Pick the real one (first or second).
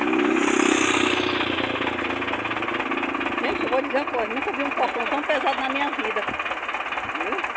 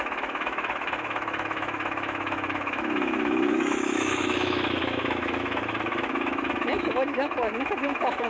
first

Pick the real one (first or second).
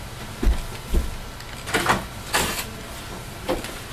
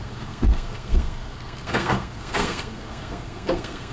first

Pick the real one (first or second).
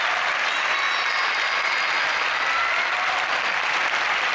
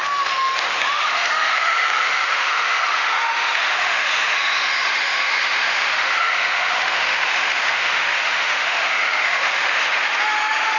first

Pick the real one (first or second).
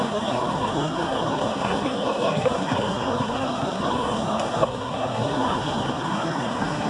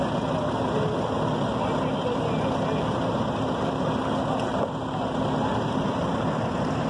second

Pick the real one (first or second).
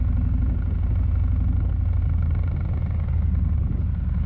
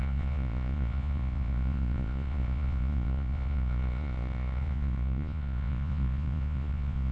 first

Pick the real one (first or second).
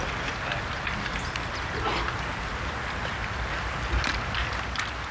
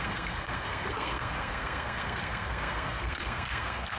first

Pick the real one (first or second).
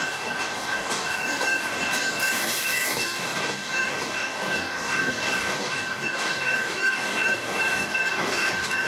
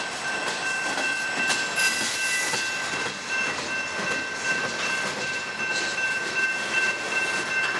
second